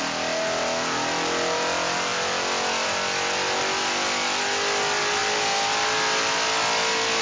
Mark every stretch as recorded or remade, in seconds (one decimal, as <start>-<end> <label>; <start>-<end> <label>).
0.0-7.2 recorded